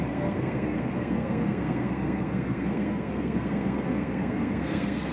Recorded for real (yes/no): no